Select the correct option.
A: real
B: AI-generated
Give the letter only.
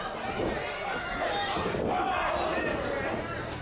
A